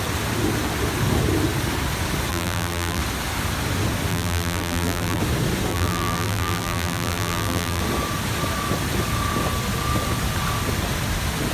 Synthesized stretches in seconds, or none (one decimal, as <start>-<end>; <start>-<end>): 2.3-3.0; 4.1-5.2; 5.7-7.8